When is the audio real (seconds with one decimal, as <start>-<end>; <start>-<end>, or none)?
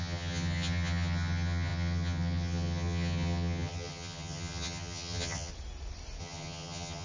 5.5-6.2